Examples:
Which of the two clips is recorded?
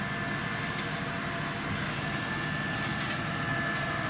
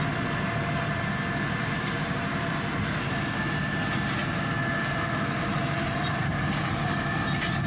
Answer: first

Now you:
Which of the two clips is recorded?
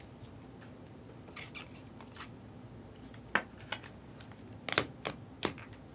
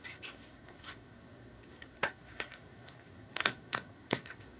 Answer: first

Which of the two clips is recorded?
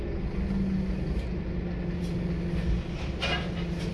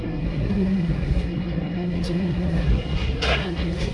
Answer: first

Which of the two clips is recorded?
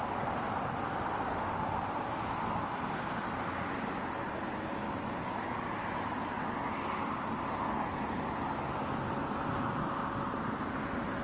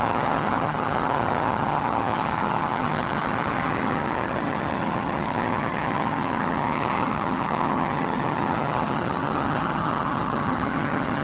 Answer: first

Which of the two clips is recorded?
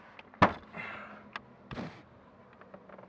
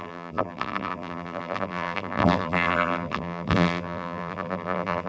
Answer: first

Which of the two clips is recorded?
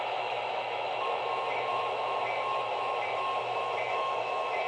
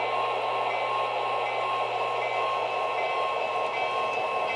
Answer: second